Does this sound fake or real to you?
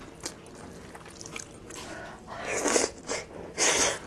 real